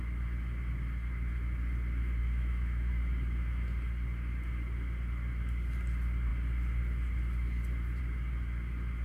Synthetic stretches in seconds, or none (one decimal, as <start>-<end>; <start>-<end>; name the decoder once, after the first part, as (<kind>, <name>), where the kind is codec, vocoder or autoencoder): 2.2-2.9 (autoencoder, DAC-VAE)